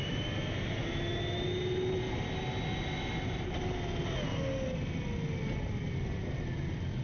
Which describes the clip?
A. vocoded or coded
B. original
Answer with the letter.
B